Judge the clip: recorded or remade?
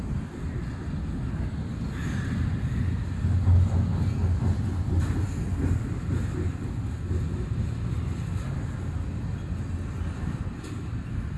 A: recorded